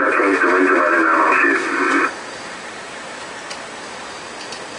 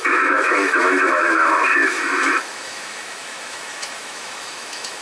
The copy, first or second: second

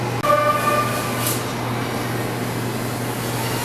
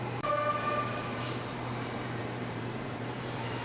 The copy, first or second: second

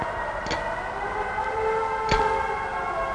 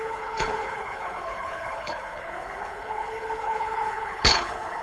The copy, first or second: second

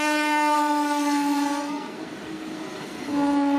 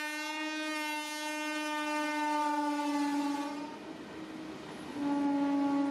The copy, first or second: first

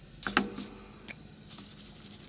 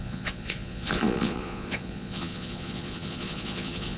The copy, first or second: second